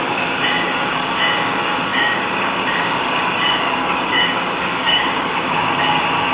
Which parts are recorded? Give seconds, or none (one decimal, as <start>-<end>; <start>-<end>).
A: none